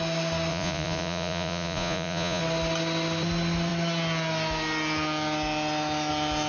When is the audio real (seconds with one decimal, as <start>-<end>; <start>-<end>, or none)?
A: 0.0-0.5; 2.4-6.5